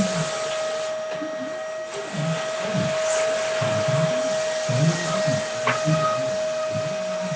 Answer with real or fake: real